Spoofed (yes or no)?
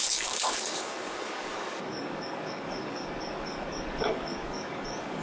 yes